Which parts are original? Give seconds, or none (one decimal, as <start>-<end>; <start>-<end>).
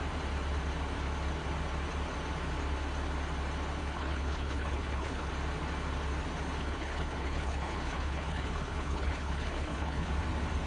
0.0-3.8; 5.3-6.6; 10.1-10.7